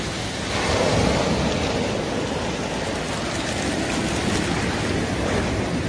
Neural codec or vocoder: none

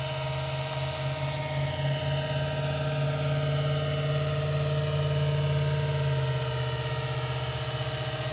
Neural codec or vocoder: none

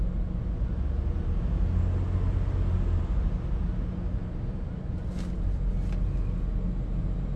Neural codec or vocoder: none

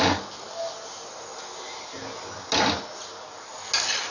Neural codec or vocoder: none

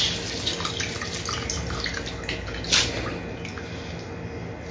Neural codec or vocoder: none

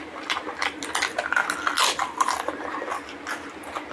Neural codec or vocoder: none